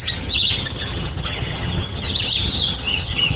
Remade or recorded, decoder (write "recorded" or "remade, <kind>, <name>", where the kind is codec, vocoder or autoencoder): remade, vocoder, HiFi-GAN